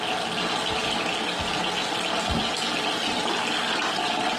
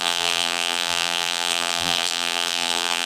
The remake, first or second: second